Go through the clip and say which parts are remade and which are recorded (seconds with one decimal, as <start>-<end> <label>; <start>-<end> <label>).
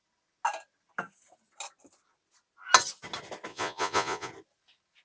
0.0-3.5 recorded; 3.5-4.3 remade; 4.3-5.0 recorded